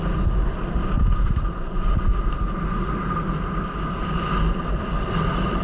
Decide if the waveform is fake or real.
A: real